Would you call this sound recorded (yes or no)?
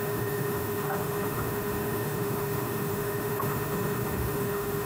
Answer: no